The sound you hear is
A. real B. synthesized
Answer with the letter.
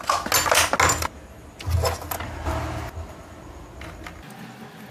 A